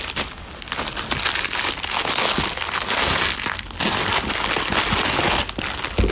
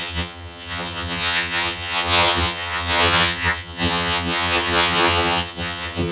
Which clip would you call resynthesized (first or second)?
second